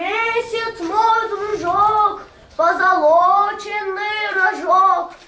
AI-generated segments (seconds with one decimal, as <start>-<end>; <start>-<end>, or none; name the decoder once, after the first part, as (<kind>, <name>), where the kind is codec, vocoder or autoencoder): none